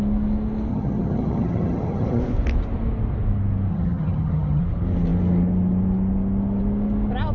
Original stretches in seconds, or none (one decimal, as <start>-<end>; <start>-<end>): 0.0-0.7; 2.2-3.7; 4.6-7.3